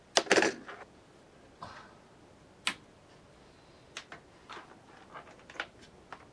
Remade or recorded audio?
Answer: recorded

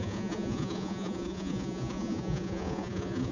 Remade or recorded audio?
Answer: remade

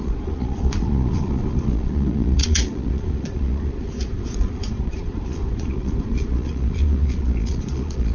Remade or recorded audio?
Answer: remade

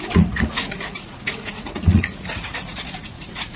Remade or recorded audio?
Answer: remade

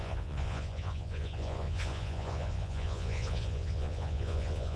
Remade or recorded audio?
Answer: remade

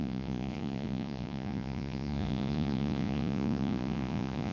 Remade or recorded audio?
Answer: remade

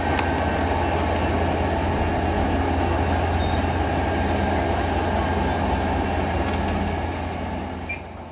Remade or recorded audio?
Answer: recorded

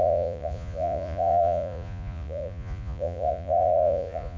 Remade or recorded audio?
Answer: remade